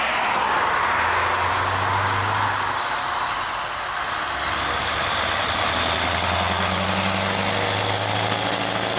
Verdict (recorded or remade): recorded